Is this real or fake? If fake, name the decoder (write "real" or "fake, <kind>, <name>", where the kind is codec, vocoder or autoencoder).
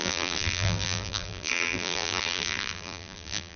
fake, vocoder, BigVGAN v2